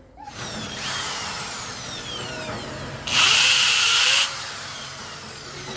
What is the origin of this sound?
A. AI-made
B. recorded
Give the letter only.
A